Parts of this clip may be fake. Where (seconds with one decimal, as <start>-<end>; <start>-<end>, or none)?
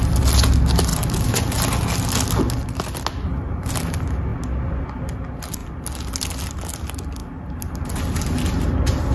none